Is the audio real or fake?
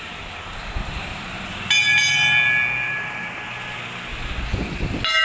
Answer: real